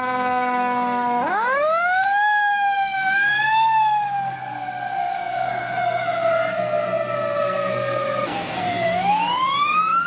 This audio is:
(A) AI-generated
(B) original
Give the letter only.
A